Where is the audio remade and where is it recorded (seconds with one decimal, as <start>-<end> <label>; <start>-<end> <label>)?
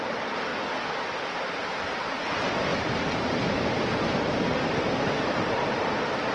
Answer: 0.0-0.5 remade; 0.5-1.2 recorded; 1.2-6.3 remade